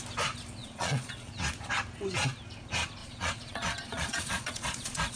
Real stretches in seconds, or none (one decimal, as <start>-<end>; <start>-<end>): 0.0-0.6; 1.3-3.0